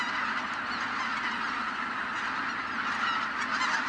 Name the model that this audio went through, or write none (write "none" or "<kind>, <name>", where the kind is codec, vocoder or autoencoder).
none